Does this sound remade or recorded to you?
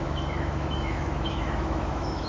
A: remade